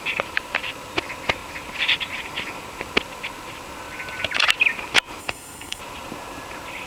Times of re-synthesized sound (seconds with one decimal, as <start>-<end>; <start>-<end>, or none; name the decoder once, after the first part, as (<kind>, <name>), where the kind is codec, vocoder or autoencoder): 5.2-5.8 (codec, SNAC)